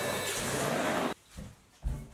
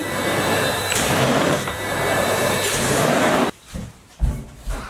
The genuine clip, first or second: first